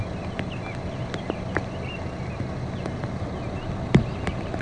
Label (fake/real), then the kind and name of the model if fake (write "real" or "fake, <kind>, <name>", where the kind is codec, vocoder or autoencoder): real